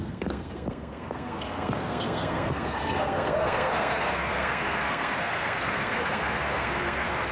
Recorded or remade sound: remade